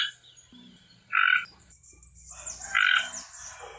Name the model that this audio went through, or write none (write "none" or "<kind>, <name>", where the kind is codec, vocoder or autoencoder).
none